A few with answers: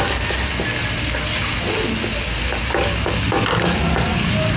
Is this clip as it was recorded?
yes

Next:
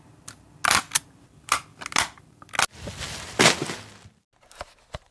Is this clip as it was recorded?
yes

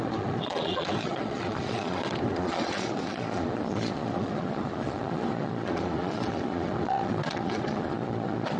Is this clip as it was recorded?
no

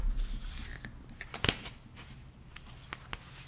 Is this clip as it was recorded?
yes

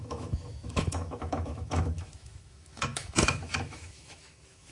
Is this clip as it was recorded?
no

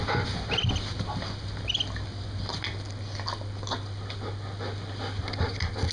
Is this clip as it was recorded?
yes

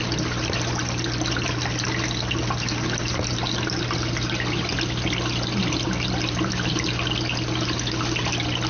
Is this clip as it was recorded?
yes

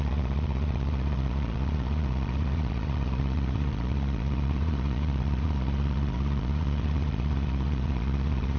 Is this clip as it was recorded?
no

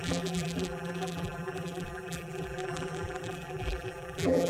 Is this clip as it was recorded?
no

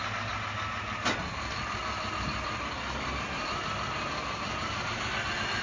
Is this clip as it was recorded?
yes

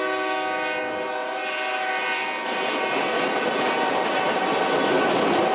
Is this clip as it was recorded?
yes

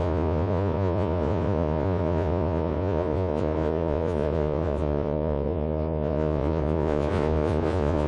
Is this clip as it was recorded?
no